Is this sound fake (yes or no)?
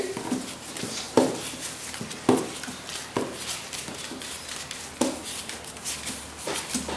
no